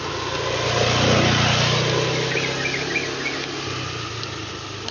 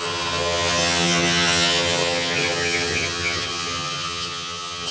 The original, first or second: first